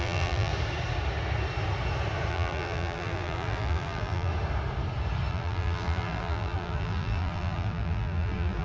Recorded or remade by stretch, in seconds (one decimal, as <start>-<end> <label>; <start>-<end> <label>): 0.0-0.5 remade; 0.5-2.3 recorded; 2.3-4.3 remade; 4.3-5.3 recorded; 5.3-8.6 remade